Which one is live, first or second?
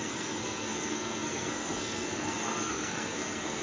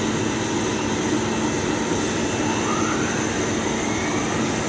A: second